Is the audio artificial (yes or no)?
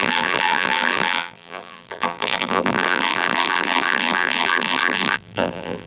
yes